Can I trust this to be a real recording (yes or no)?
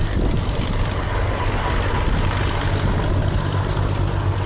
yes